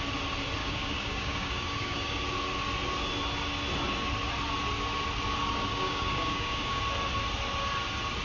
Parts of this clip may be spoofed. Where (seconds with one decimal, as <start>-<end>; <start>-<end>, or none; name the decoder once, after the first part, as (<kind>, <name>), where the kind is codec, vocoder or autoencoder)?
0.6-2.2 (codec, DAC); 5.7-6.8